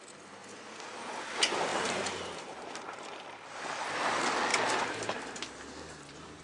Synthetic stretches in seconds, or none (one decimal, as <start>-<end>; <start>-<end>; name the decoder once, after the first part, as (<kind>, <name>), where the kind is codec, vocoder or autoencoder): 1.7-3.6 (vocoder, BigVGAN v2); 4.5-5.2